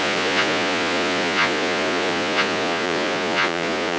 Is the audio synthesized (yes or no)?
yes